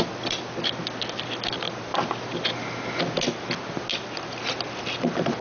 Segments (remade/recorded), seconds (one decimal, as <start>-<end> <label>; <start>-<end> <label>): 0.0-5.4 recorded